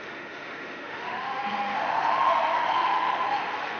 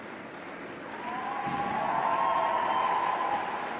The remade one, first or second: first